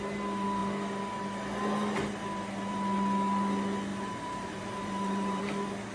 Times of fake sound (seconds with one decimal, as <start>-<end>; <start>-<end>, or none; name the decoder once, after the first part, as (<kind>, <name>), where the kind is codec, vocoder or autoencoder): 3.9-5.4 (vocoder, BigVGAN v2)